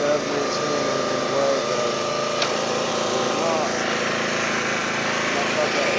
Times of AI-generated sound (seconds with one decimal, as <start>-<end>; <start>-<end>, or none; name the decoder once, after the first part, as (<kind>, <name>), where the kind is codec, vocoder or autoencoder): 1.6-2.9 (vocoder, BigVGAN v2); 4.8-6.0